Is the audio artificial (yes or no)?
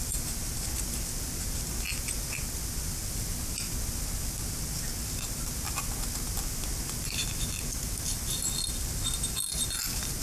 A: no